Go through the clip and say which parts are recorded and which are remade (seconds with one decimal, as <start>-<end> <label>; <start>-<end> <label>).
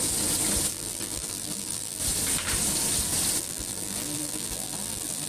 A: 0.0-0.7 recorded; 0.7-2.0 remade; 2.0-3.4 recorded; 3.4-5.3 remade